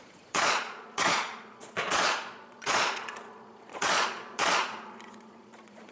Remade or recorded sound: remade